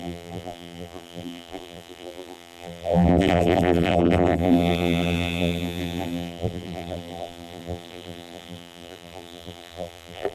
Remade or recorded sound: remade